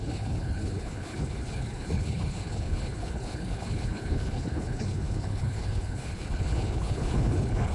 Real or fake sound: fake